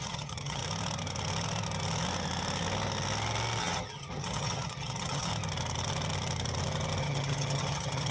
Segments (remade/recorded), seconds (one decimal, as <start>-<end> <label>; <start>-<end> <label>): 0.0-0.6 remade; 0.6-3.6 recorded; 3.6-5.3 remade; 5.3-7.0 recorded; 7.0-8.1 remade